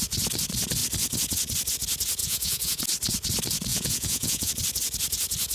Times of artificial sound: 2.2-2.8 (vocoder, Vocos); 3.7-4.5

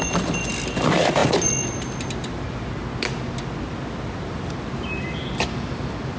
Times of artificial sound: none

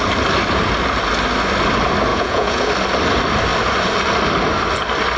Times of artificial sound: 2.1-2.7 (vocoder, Vocos)

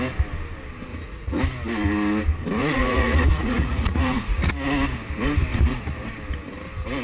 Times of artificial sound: 0.9-1.4 (vocoder, Vocos); 2.6-4.5; 5.5-6.1

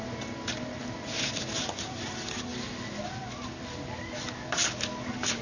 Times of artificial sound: none

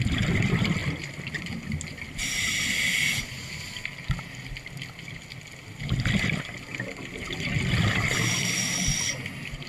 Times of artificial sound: none

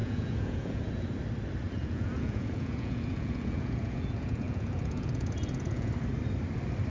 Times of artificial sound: 0.0-0.8 (vocoder, Vocos); 1.8-5.9